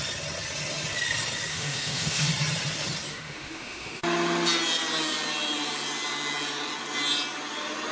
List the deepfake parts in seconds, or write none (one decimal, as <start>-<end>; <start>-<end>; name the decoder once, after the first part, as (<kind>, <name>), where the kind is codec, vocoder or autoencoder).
1.5-2.3 (autoencoder, DAC-VAE); 3.1-4.0